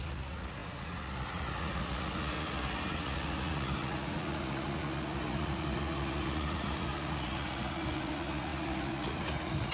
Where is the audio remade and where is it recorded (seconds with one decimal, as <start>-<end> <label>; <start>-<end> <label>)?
0.0-9.7 remade